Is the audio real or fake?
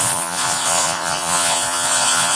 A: fake